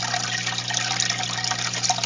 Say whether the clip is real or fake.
real